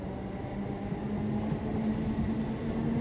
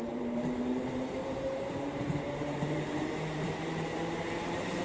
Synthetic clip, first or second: second